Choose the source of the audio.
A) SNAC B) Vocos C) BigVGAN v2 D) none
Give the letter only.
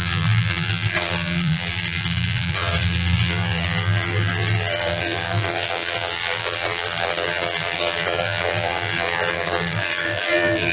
C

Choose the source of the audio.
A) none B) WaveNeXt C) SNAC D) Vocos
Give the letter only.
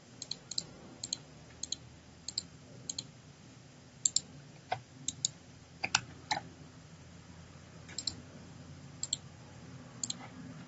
A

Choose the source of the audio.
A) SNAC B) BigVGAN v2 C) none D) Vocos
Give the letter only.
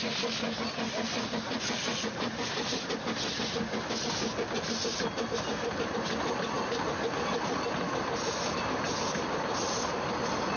C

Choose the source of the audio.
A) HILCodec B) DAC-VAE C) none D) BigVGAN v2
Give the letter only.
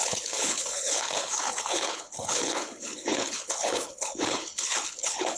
A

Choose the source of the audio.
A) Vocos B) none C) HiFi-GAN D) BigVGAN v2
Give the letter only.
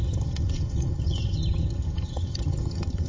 C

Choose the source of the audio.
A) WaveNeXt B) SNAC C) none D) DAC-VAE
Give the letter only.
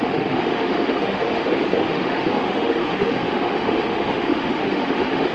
D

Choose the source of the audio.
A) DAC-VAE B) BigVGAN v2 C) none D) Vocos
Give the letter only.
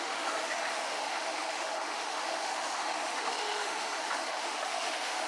A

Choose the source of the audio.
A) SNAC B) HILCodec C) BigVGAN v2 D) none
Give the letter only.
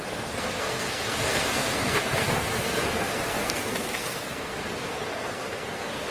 A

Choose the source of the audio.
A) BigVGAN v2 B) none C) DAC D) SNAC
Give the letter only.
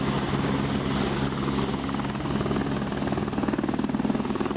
B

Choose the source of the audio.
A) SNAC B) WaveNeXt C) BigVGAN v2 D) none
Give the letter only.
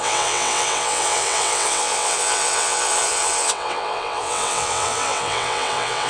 B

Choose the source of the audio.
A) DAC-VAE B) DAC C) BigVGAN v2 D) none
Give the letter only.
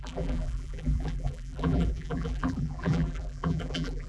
C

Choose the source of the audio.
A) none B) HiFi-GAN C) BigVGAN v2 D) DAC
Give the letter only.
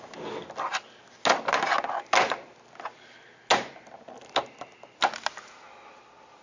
A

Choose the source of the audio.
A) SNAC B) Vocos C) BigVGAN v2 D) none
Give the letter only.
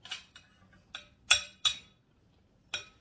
D